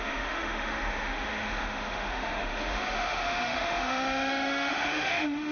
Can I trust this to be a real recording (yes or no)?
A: no